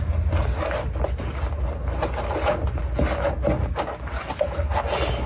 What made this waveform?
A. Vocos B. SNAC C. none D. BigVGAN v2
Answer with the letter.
C